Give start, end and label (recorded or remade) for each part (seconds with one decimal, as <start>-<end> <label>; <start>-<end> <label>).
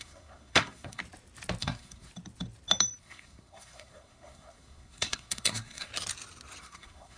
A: 0.0-1.0 remade; 1.0-1.6 recorded; 1.6-2.1 remade; 2.1-3.0 recorded; 3.0-5.9 remade; 5.9-6.6 recorded; 6.6-7.2 remade